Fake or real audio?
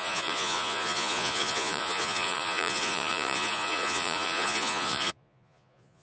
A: fake